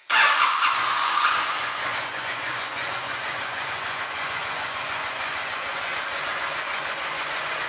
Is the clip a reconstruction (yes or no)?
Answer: yes